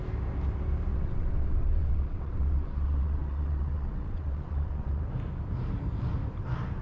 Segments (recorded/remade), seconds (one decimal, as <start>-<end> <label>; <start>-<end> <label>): 0.0-0.9 recorded; 0.9-5.0 remade; 5.0-6.8 recorded